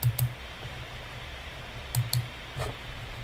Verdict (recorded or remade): remade